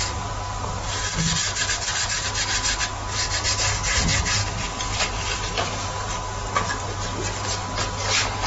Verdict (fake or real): real